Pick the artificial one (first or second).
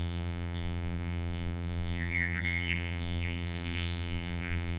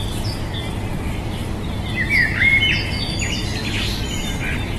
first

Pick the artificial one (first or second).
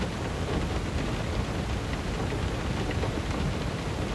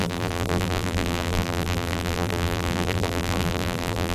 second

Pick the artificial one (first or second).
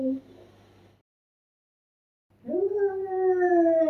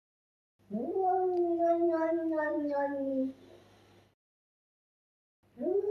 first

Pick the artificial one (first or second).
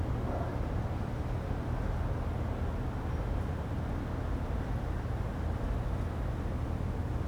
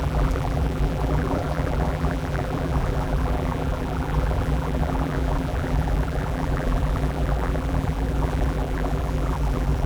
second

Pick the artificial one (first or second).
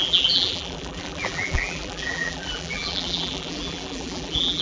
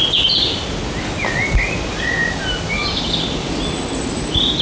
first